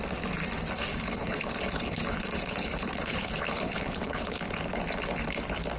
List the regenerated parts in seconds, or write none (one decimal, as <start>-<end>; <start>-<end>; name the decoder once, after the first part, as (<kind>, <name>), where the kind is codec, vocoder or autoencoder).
0.9-4.4 (codec, HILCodec)